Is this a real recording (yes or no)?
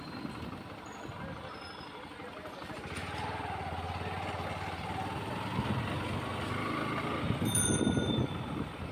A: yes